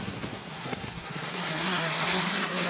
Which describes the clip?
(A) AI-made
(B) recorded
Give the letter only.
A